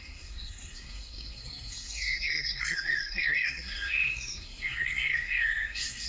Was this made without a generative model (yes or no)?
no